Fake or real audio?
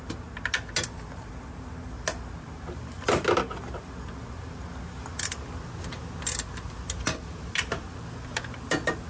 real